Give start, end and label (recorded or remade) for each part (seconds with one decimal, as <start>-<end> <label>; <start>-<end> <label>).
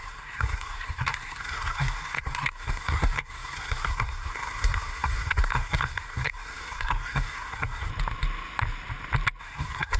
0.0-7.9 remade; 7.9-9.4 recorded; 9.4-10.0 remade